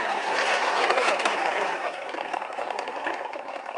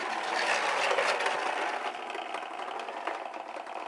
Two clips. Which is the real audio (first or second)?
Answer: second